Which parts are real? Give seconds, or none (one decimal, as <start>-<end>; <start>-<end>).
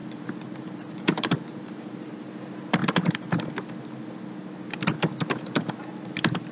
2.1-6.5